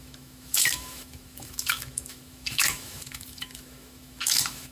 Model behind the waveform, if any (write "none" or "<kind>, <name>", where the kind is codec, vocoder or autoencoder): autoencoder, DAC-VAE